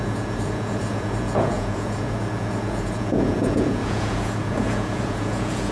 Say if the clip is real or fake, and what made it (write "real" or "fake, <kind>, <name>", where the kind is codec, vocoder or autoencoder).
fake, vocoder, Vocos